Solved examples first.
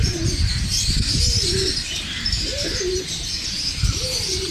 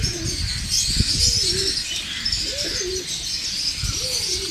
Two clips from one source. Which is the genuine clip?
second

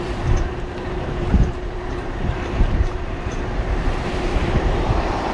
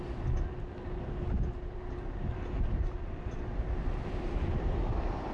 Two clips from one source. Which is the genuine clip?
second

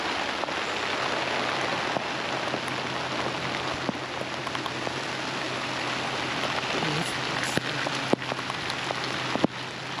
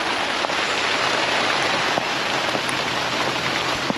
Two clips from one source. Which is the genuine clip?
first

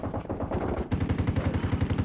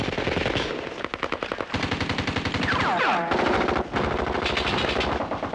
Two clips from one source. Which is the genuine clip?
second